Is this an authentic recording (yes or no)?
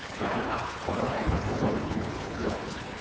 no